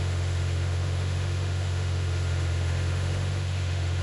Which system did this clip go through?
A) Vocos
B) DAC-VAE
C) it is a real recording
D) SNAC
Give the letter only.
B